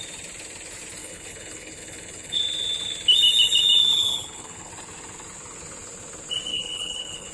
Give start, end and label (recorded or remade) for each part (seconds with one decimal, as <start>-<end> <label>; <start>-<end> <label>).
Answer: 0.0-1.0 recorded; 1.0-2.4 remade; 2.4-3.9 recorded; 3.9-4.7 remade; 4.7-6.5 recorded; 6.5-7.3 remade